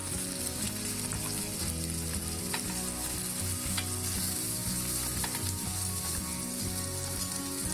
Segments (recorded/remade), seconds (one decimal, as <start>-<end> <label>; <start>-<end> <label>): 0.0-7.7 recorded